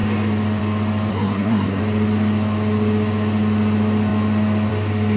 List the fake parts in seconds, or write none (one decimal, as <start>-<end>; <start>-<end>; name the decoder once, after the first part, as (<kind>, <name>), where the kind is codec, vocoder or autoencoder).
1.1-1.8 (codec, SNAC)